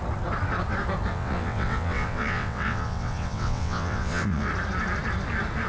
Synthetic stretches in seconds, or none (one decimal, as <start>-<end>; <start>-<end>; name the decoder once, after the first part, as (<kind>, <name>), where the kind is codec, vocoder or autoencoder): 1.1-4.5 (vocoder, WaveNeXt)